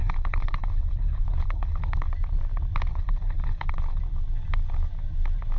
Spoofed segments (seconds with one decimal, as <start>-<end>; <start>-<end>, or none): 0.0-2.1; 2.9-4.0